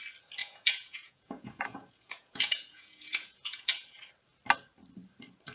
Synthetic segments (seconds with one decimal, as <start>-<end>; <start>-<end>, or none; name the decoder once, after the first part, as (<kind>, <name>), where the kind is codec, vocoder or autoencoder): 0.4-3.7 (vocoder, Vocos)